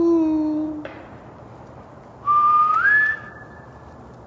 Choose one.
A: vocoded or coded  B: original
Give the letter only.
B